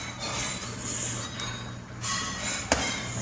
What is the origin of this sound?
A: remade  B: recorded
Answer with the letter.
B